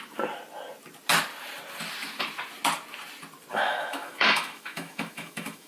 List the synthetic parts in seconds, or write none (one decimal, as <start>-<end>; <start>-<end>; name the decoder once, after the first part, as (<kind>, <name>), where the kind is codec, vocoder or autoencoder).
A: 3.5-5.7 (autoencoder, DAC-VAE)